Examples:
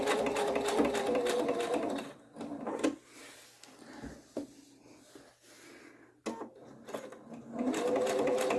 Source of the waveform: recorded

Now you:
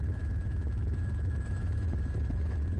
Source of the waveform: remade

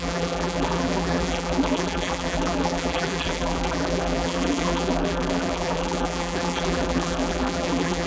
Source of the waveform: remade